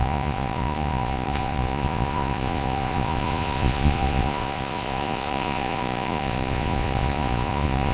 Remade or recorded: remade